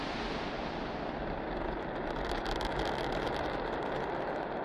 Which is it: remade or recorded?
remade